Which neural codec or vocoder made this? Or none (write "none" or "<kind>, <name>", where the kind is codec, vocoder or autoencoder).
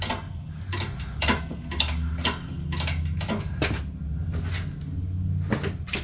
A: none